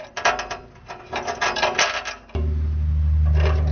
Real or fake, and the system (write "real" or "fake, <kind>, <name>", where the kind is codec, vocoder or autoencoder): real